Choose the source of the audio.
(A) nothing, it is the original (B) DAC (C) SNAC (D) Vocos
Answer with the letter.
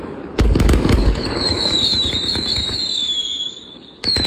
B